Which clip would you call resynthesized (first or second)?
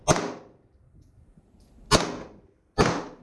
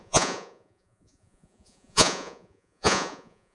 second